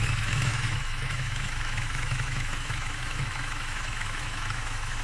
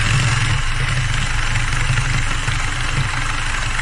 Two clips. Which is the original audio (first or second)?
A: second